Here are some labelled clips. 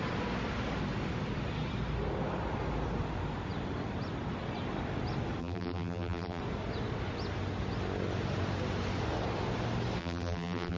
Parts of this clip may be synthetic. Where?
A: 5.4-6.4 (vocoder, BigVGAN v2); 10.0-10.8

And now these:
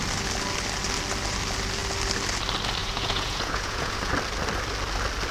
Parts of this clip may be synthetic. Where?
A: 2.8-4.1 (vocoder, Vocos)

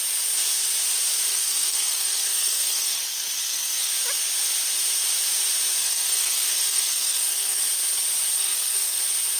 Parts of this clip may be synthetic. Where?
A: 1.3-3.9 (codec, SNAC); 5.8-7.6; 8.3-9.0

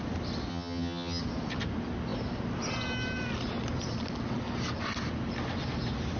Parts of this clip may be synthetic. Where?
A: 0.5-1.2 (vocoder, HiFi-GAN)